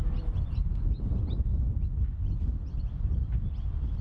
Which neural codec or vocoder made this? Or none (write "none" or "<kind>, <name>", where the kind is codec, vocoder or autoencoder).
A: none